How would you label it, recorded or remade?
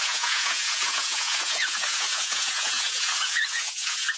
remade